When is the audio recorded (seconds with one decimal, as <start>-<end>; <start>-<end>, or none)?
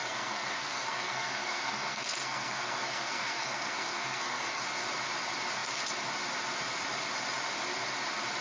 4.6-8.4